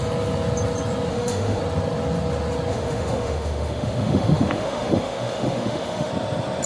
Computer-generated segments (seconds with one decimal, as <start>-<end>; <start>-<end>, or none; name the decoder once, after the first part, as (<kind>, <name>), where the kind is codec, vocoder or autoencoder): 1.1-1.6 (autoencoder, DAC-VAE); 2.7-6.1